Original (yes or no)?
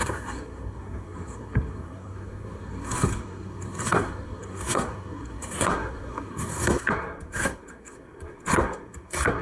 no